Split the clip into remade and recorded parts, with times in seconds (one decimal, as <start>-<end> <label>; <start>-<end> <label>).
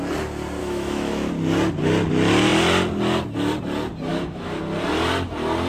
0.0-0.6 recorded; 0.6-1.3 remade; 1.3-4.1 recorded; 4.1-4.6 remade; 4.6-5.7 recorded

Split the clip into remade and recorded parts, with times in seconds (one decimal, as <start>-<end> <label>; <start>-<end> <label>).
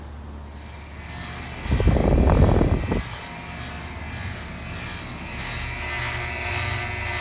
0.0-7.2 recorded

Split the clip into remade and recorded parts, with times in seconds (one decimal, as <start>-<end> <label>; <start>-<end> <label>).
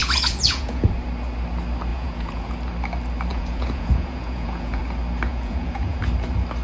0.0-0.9 remade; 0.9-1.9 recorded; 1.9-2.5 remade; 2.5-3.3 recorded; 3.3-4.8 remade; 4.8-5.3 recorded; 5.3-6.0 remade; 6.0-6.6 recorded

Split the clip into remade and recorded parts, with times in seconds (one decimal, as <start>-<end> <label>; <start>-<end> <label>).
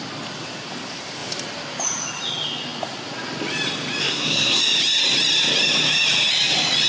0.0-4.0 recorded; 4.0-4.6 remade; 4.6-6.9 recorded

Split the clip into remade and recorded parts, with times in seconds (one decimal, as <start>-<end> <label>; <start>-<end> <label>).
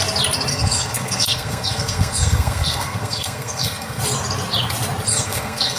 0.0-0.5 recorded; 0.5-4.0 remade; 4.0-5.1 recorded; 5.1-5.8 remade